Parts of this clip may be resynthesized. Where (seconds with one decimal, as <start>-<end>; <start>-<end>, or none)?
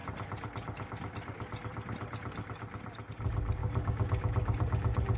3.6-5.2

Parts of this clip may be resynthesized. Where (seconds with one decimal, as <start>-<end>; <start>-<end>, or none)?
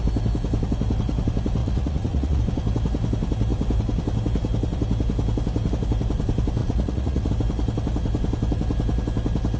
1.6-2.4; 6.6-7.3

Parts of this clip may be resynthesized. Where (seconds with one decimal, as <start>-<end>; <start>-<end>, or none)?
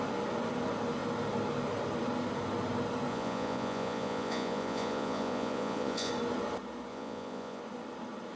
3.1-6.1; 6.9-7.6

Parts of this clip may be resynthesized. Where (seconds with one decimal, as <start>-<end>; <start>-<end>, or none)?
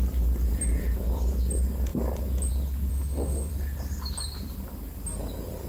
2.9-3.5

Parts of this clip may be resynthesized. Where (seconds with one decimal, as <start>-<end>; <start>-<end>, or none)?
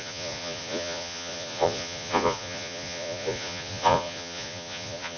0.0-5.2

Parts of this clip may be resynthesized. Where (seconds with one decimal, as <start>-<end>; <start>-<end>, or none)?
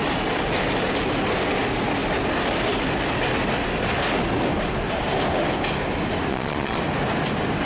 6.3-6.8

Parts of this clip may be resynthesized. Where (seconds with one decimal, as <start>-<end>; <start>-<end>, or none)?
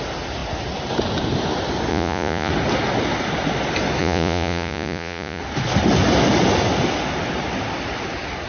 1.9-2.5; 4.0-5.4